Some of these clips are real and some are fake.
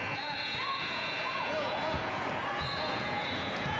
fake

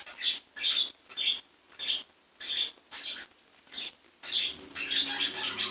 real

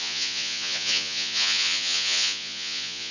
fake